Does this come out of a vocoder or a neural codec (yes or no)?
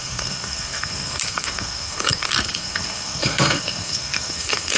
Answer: yes